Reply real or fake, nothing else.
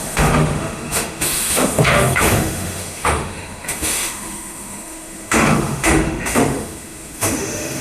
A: fake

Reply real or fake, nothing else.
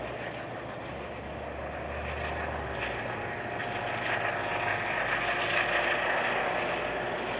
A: real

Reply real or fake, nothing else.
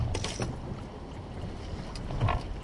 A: real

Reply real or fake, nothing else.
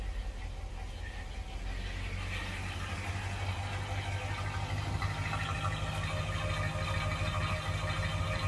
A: real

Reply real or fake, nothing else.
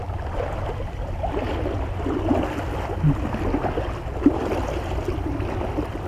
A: real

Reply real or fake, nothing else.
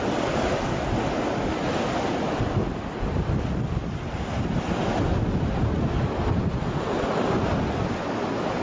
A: real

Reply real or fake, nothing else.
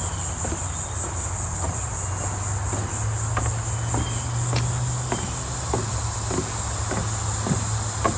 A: real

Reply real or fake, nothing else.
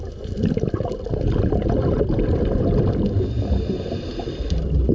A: real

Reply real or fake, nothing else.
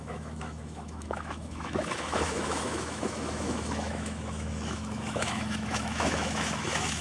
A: fake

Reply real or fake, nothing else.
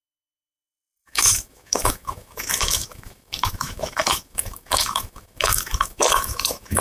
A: fake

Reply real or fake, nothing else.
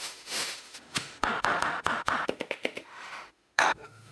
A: fake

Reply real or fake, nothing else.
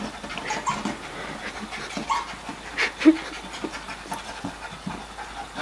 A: real